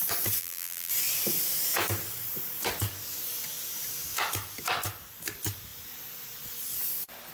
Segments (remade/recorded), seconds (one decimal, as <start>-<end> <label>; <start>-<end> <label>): 0.0-0.4 recorded; 0.4-0.9 remade; 0.9-7.3 recorded